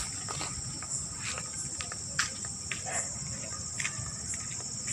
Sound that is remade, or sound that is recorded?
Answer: recorded